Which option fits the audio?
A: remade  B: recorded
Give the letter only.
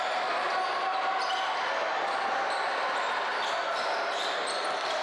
B